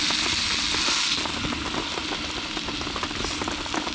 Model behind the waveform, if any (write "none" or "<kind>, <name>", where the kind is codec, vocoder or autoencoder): none